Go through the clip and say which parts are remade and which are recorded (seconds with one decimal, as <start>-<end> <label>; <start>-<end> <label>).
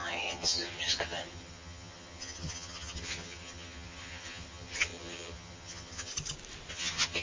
0.0-6.1 remade; 6.1-6.7 recorded; 6.7-7.2 remade